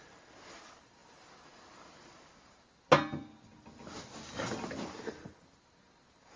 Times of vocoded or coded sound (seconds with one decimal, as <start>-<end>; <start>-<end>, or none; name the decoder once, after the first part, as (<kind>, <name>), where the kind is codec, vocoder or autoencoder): none